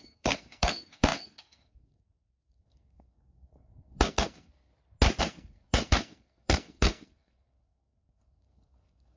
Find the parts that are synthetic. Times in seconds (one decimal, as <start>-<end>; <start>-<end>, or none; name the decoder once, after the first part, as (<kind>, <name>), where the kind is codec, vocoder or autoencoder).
0.0-4.7 (codec, SNAC); 5.2-9.2